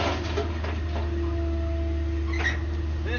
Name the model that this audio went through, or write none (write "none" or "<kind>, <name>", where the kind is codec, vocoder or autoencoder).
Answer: none